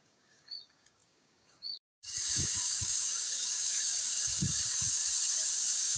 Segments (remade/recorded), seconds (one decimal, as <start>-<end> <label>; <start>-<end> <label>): 0.0-5.0 remade; 5.0-5.5 recorded; 5.5-6.0 remade